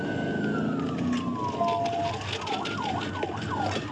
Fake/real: real